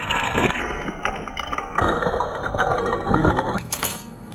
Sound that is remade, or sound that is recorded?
remade